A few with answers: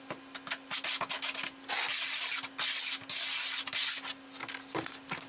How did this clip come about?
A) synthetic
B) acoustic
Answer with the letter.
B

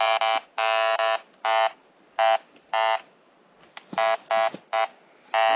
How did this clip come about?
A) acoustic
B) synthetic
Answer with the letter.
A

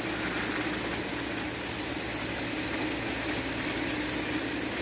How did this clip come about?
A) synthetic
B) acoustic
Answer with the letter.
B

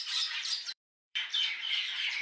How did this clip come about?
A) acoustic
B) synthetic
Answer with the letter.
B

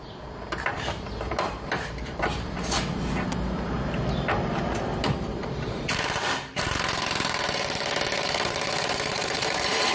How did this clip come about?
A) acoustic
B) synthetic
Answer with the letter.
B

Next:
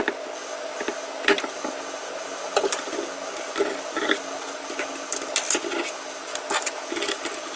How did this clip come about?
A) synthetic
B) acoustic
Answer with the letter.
B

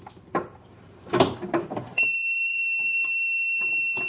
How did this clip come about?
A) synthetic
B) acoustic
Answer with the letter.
A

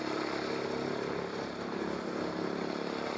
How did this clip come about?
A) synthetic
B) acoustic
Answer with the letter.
B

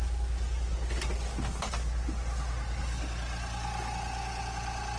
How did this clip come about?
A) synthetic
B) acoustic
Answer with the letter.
B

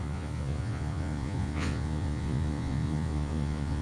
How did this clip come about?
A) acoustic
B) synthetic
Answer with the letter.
B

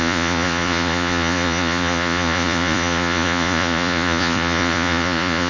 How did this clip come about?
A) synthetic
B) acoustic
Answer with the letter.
A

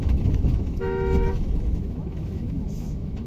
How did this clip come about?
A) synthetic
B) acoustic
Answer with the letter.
A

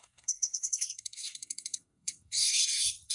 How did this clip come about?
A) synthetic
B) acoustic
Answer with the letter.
A